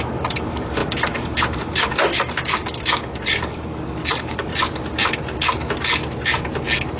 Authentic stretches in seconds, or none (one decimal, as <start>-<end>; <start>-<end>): 4.5-7.0